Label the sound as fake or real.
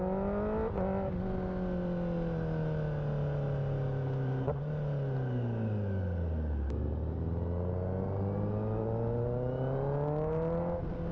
real